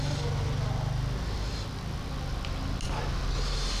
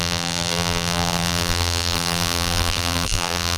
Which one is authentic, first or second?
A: first